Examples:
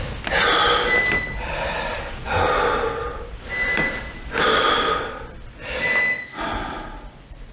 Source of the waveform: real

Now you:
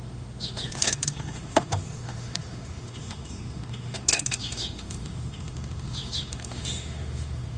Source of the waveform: fake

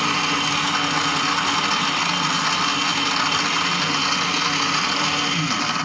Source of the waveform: real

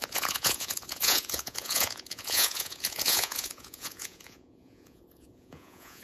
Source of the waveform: fake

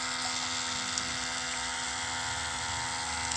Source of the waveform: real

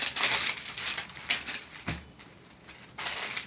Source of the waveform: fake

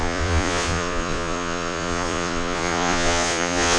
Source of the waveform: fake